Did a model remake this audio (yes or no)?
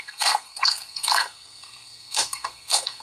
yes